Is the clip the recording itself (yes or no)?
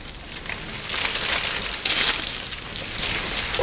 yes